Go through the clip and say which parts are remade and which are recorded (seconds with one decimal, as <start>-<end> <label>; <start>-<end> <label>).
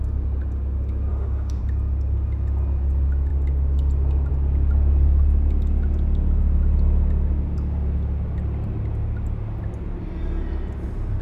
0.0-1.1 recorded; 1.1-1.6 remade; 1.6-11.2 recorded